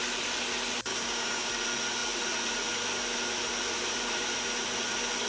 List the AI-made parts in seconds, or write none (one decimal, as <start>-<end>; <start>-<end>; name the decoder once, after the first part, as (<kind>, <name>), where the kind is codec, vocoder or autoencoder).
0.9-1.5 (codec, DAC)